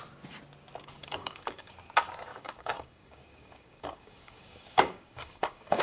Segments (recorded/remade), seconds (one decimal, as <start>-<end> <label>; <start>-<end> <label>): 0.0-1.0 recorded; 1.0-1.7 remade; 1.7-2.3 recorded; 2.3-5.8 remade